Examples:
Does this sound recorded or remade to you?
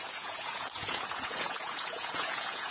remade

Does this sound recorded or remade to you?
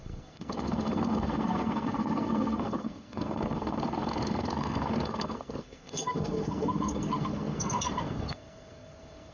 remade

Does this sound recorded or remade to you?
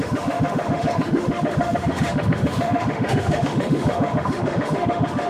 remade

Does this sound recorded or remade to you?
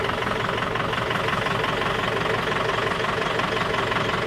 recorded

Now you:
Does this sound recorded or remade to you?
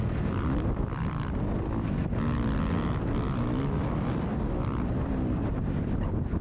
recorded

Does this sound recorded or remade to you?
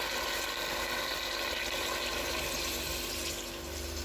recorded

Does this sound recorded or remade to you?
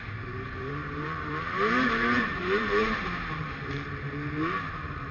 remade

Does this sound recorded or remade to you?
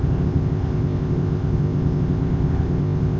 remade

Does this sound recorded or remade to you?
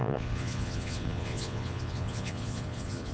remade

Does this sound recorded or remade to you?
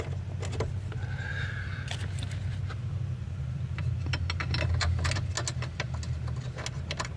recorded